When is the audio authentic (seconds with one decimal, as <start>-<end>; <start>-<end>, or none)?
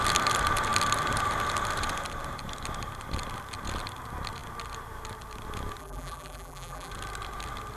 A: 0.0-5.8; 6.9-7.8